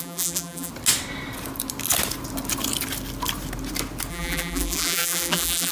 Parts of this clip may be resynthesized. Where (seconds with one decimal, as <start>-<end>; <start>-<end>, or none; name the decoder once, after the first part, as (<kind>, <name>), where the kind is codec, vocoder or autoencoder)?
0.0-0.7 (vocoder, BigVGAN v2); 4.1-5.7